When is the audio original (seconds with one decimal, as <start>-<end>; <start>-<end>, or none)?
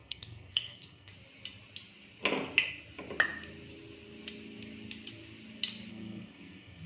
1.1-5.9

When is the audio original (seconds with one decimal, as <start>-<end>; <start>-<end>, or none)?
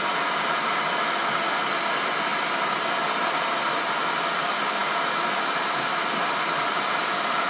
0.0-7.5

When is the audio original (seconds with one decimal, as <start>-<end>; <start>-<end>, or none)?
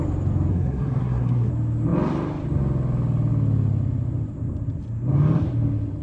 0.0-0.5; 1.5-6.0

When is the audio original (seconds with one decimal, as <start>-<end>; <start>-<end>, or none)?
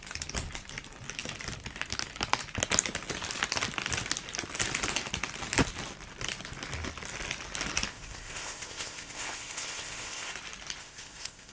0.0-7.9; 10.3-10.8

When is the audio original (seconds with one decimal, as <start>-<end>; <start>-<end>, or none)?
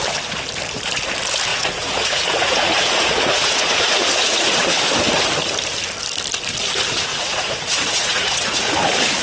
0.0-1.5; 4.7-7.1; 8.7-9.2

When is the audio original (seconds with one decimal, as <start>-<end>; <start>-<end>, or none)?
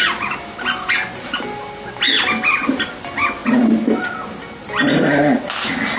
0.0-6.0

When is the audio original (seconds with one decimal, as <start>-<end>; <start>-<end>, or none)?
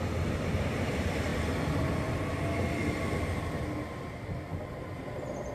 0.0-5.5